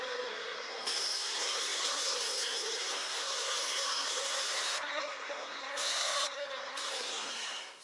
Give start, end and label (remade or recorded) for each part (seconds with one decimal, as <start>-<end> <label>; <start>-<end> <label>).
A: 0.0-7.8 remade